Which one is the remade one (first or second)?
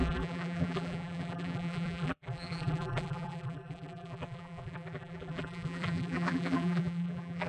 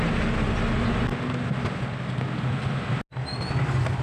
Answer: first